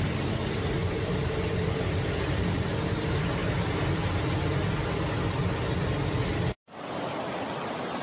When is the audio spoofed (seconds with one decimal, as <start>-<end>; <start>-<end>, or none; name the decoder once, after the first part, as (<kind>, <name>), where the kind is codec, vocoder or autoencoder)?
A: 0.8-2.7 (vocoder, BigVGAN v2); 3.4-4.0